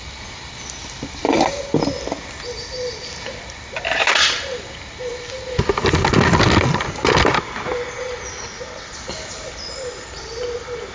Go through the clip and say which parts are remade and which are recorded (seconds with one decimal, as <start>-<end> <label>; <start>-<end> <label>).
0.0-10.9 recorded